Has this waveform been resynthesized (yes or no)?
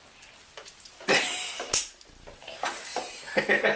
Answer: no